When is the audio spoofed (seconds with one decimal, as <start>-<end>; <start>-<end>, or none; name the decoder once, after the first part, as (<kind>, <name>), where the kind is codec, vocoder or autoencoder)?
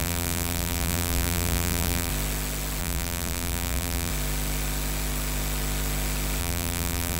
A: 0.0-2.1 (vocoder, BigVGAN v2); 2.8-4.1; 6.4-7.2